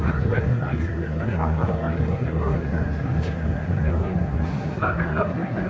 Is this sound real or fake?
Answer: fake